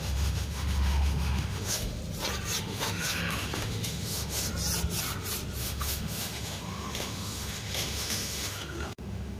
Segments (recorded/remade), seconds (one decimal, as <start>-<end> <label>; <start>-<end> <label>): 0.0-2.0 remade; 2.0-2.6 recorded; 2.6-4.5 remade; 4.5-5.6 recorded; 5.6-9.4 remade